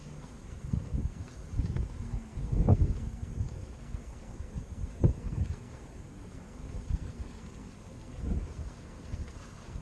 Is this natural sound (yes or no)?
no